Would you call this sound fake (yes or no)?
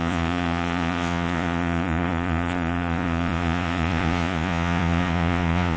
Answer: yes